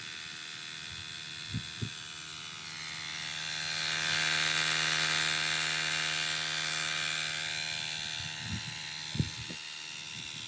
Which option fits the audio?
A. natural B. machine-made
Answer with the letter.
A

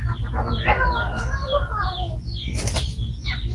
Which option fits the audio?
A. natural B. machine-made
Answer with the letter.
A